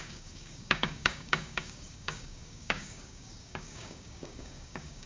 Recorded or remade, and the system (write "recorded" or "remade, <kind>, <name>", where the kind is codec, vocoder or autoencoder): remade, codec, DAC